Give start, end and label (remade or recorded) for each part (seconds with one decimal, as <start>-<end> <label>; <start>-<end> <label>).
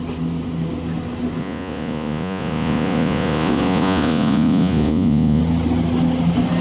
0.0-1.4 recorded; 1.4-5.4 remade; 5.4-6.6 recorded